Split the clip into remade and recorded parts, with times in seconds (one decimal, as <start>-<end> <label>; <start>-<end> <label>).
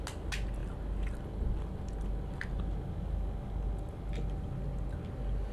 0.0-5.5 recorded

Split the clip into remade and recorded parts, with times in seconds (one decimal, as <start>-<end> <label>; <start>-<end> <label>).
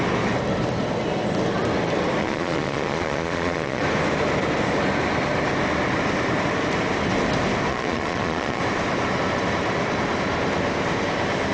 0.0-2.2 recorded; 2.2-3.8 remade; 3.8-7.7 recorded; 7.7-8.6 remade; 8.6-11.5 recorded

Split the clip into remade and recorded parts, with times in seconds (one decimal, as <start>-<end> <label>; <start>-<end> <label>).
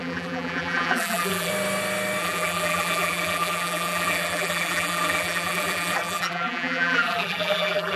0.0-1.5 remade; 1.5-2.2 recorded; 2.2-8.0 remade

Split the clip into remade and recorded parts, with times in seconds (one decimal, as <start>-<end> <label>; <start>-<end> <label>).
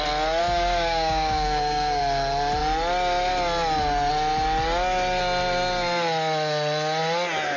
0.0-0.4 recorded; 0.4-2.0 remade; 2.0-7.6 recorded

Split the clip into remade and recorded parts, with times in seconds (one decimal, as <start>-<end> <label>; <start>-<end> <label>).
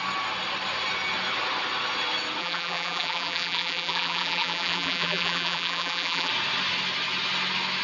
0.0-2.4 recorded; 2.4-6.3 remade; 6.3-7.8 recorded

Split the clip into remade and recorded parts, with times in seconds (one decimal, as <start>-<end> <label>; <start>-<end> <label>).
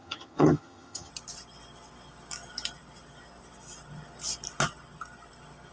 0.0-1.1 remade; 1.1-5.7 recorded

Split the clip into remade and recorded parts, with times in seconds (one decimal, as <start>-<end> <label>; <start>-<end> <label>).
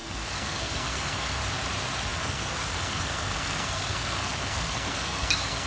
0.0-1.4 remade; 1.4-2.1 recorded; 2.1-5.7 remade